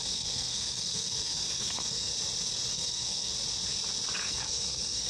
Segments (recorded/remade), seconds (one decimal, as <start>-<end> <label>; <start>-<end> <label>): 0.0-2.1 remade; 2.1-2.7 recorded; 2.7-3.3 remade; 3.3-4.2 recorded; 4.2-5.1 remade